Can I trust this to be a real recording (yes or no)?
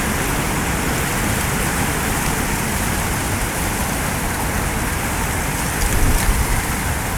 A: yes